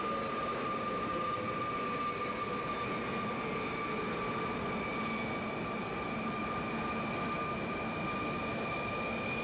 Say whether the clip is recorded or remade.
recorded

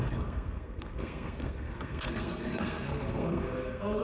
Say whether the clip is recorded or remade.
remade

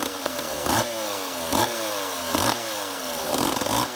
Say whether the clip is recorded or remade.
remade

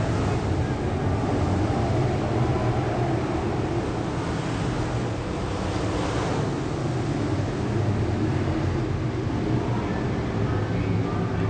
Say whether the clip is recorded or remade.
recorded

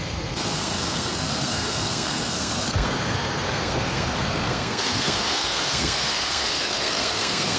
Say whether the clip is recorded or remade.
remade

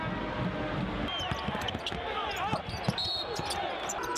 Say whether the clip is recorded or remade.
recorded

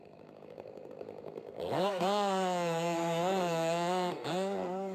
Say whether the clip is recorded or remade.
remade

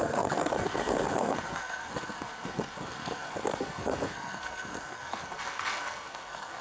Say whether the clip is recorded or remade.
remade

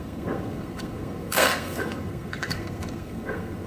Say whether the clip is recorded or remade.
remade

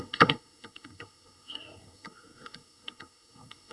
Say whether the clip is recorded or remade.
remade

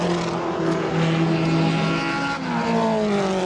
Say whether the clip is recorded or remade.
recorded